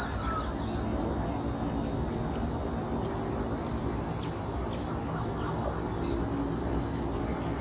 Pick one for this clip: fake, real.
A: real